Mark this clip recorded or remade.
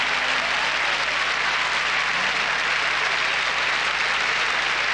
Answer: recorded